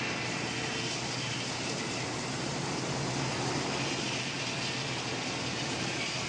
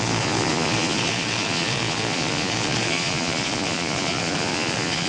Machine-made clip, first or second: second